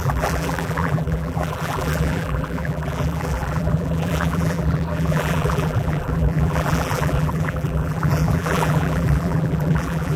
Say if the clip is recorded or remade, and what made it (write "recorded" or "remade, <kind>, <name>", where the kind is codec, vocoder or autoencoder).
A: remade, vocoder, BigVGAN v2